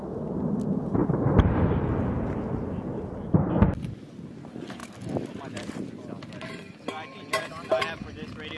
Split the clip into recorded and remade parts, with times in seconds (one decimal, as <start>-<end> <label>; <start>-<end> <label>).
0.0-1.0 recorded; 1.0-1.8 remade; 1.8-8.6 recorded

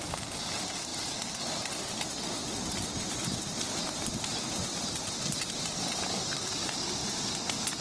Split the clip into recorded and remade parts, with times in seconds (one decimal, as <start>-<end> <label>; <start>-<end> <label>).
0.0-7.0 remade; 7.0-7.8 recorded

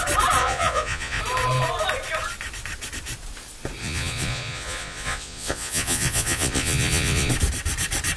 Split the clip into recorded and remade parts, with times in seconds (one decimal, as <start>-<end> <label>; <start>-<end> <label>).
0.0-0.4 recorded; 0.4-1.2 remade; 1.2-3.8 recorded; 3.8-7.3 remade; 7.3-8.2 recorded

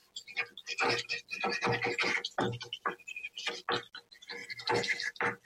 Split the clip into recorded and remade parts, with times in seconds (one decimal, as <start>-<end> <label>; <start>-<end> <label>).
0.0-5.4 recorded

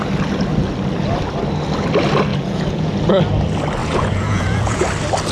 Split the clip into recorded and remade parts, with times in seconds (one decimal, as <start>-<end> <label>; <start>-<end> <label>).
0.0-2.3 recorded; 2.3-2.9 remade; 2.9-3.8 recorded; 3.8-4.8 remade; 4.8-5.3 recorded

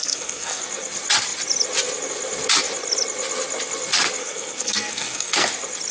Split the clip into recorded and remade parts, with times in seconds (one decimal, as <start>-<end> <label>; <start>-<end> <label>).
0.0-0.6 remade; 0.6-4.2 recorded; 4.2-5.5 remade; 5.5-5.9 recorded

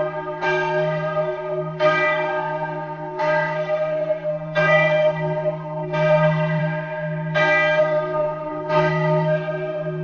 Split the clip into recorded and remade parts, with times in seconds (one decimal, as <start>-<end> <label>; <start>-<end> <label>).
0.0-6.6 remade; 6.6-7.8 recorded; 7.8-10.0 remade

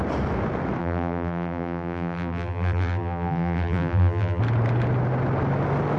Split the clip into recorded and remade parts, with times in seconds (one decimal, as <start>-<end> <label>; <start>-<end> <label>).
0.0-0.8 recorded; 0.8-4.4 remade; 4.4-6.0 recorded